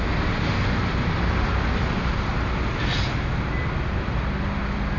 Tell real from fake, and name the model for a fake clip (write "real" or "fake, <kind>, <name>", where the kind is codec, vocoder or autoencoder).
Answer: real